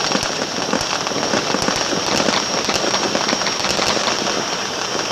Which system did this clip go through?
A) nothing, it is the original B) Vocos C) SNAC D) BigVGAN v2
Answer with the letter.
A